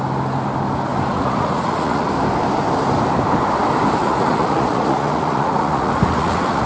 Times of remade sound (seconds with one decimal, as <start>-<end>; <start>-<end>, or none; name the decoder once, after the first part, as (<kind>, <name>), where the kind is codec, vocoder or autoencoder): 1.1-2.1 (vocoder, Vocos); 4.0-6.7